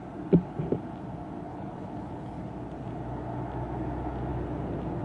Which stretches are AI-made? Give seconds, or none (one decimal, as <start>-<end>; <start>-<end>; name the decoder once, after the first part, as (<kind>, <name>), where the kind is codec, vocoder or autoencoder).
1.5-2.5 (codec, HILCodec)